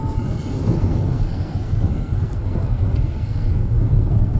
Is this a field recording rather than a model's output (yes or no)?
no